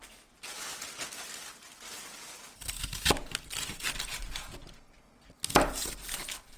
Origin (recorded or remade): recorded